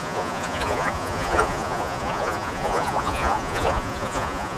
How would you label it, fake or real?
fake